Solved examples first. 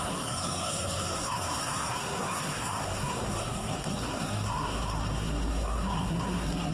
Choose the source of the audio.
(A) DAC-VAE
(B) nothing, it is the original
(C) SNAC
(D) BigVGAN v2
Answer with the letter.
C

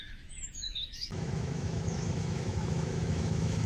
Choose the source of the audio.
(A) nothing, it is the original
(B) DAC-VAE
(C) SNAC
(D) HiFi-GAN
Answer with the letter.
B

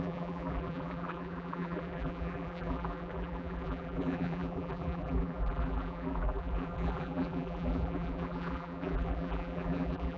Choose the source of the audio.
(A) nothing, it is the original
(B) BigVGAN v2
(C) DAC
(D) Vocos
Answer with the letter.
B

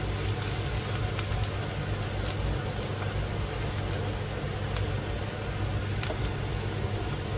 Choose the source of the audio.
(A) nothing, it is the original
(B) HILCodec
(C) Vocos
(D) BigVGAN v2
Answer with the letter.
A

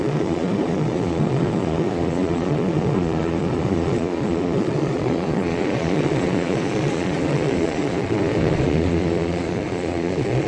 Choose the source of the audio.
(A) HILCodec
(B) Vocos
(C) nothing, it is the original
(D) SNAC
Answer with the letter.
B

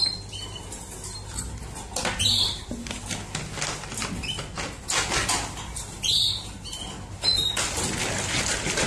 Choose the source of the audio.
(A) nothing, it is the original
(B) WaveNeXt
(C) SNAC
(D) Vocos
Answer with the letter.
A